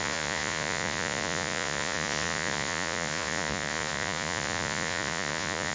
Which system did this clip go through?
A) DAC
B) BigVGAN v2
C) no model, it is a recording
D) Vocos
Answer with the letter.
D